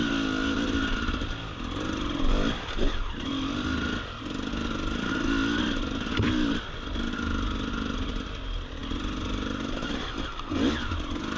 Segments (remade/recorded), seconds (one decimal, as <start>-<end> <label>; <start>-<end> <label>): 0.0-11.4 recorded